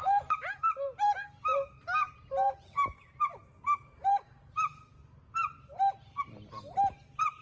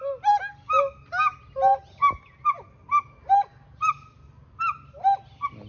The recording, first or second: second